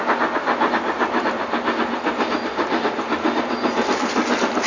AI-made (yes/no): no